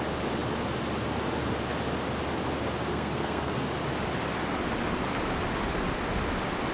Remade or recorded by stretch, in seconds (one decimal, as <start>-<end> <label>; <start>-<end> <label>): 0.0-2.9 recorded; 2.9-3.5 remade; 3.5-6.7 recorded